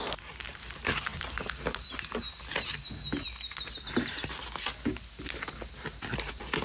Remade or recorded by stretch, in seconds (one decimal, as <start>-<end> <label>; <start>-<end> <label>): 0.0-6.6 recorded